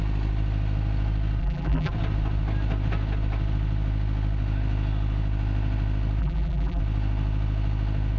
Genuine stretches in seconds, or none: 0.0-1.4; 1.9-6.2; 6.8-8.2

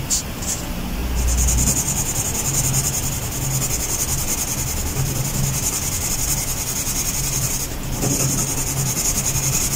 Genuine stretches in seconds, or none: 0.0-9.8

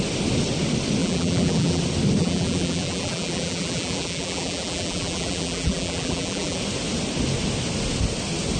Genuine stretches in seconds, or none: 0.0-1.0; 1.8-2.2; 6.6-8.6

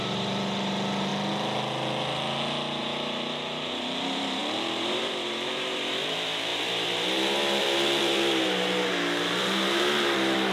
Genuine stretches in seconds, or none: 1.1-2.8

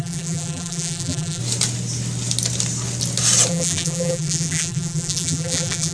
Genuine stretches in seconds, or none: 1.4-3.5

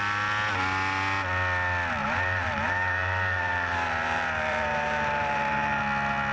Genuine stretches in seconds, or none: 0.0-2.0; 5.8-6.3

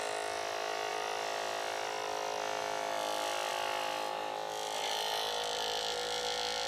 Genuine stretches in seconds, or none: 0.0-0.9; 2.6-3.5; 6.2-6.7